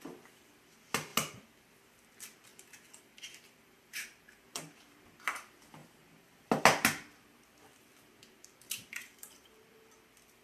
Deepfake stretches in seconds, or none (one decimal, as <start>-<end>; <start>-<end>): 2.5-5.0; 7.7-10.0